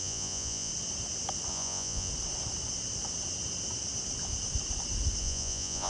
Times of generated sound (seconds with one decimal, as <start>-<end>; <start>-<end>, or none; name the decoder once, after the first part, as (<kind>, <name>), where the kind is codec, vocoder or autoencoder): 0.0-0.7 (vocoder, Vocos); 1.5-2.1; 5.2-5.9